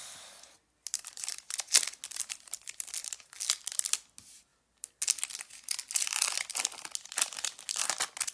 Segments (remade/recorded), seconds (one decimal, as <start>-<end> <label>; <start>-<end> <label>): 0.0-8.3 recorded